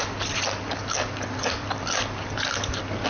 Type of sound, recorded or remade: recorded